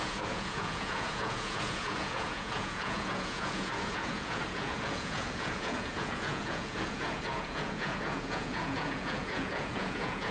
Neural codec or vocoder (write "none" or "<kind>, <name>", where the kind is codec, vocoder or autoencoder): vocoder, Vocos